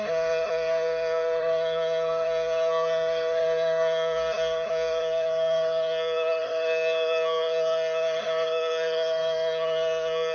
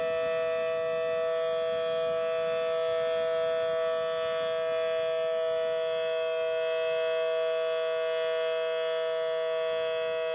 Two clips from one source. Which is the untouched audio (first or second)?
second